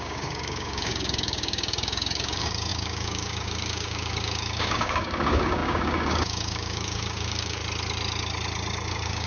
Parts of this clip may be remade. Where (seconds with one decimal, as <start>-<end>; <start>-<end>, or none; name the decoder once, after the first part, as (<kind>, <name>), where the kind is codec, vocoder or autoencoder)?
0.0-7.6 (codec, DAC); 8.9-9.3